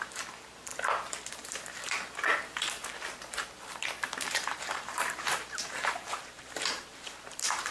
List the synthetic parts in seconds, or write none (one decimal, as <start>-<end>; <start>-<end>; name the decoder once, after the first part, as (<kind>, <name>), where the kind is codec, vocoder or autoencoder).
0.0-0.7 (vocoder, BigVGAN v2); 1.3-2.8; 4.3-7.7

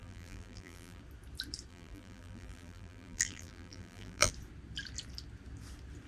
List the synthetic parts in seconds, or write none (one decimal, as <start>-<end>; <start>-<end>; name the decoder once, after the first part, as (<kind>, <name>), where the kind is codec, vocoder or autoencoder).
0.0-1.0 (vocoder, BigVGAN v2); 1.7-4.3